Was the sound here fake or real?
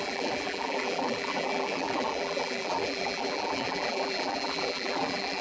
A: fake